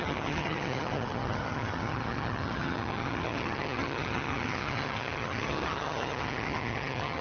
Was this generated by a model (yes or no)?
yes